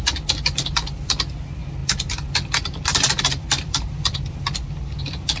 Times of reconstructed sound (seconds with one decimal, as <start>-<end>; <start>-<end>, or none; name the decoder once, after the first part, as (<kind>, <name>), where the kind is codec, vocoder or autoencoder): none